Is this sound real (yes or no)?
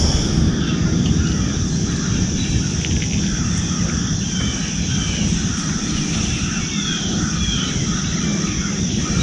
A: yes